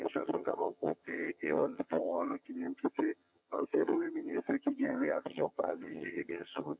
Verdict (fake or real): fake